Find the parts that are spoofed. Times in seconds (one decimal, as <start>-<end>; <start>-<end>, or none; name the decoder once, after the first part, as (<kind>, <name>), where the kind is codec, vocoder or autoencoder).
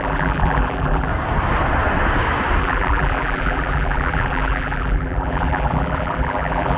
0.0-1.1 (vocoder, BigVGAN v2); 2.6-6.8